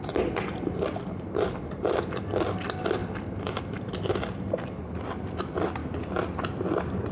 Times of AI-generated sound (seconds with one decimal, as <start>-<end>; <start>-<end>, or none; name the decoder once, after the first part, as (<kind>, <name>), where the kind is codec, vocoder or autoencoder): none